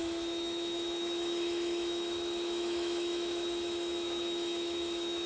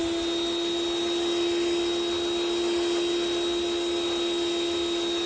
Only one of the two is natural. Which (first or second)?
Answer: second